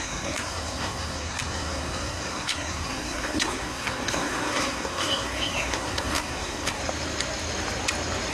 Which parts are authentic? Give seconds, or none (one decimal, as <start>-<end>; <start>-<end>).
6.8-8.3